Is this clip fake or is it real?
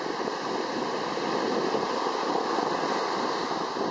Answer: real